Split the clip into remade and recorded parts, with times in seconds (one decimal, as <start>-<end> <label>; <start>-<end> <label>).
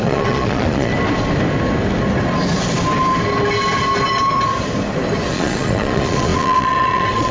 0.0-0.9 remade; 0.9-5.3 recorded; 5.3-7.3 remade